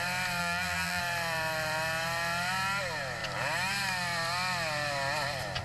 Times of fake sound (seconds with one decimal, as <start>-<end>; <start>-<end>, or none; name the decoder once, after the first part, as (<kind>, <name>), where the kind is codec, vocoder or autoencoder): 0.4-1.0 (vocoder, BigVGAN v2)